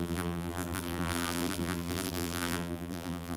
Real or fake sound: fake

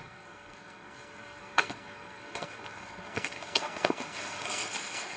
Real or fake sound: fake